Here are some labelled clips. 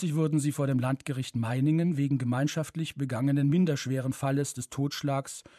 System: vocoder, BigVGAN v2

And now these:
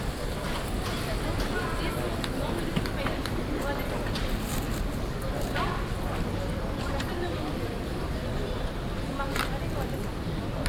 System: none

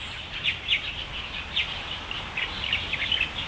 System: none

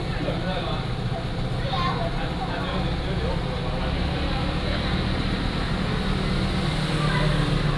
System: none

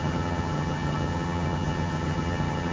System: vocoder, HiFi-GAN